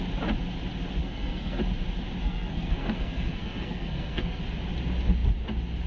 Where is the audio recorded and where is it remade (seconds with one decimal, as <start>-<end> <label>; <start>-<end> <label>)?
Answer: 0.0-1.0 recorded; 1.0-1.6 remade; 1.6-2.2 recorded; 2.2-4.4 remade; 4.4-5.9 recorded